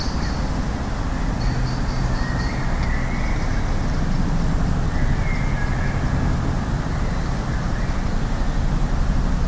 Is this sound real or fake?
real